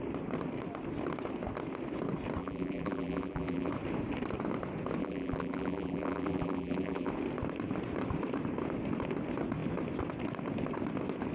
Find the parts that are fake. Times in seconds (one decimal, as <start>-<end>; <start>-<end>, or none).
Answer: 2.4-3.7; 5.0-7.1